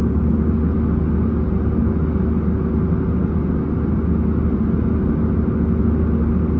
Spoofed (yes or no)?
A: no